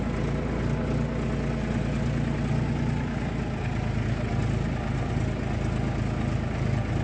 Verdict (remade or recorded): recorded